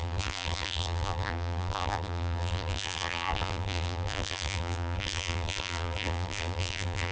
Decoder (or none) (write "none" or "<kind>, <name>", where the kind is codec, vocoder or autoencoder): vocoder, BigVGAN v2